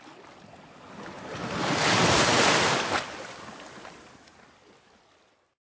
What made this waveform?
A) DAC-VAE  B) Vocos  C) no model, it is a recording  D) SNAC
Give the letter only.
C